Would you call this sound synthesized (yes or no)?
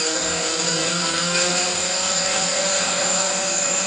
yes